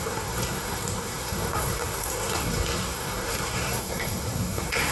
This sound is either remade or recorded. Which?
remade